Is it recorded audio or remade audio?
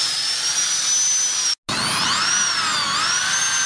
recorded